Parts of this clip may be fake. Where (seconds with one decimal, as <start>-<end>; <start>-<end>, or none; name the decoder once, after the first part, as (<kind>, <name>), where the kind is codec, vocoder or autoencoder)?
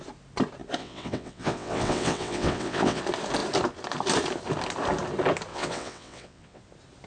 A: 0.8-3.0 (vocoder, WaveNeXt); 5.5-6.6